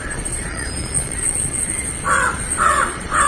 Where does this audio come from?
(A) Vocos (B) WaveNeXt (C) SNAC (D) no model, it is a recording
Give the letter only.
A